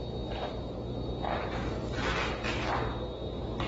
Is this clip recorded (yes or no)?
yes